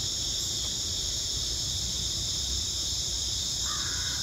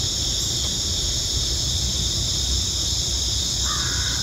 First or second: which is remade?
first